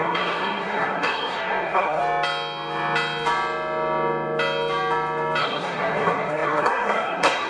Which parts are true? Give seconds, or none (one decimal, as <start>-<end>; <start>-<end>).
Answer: 2.0-5.4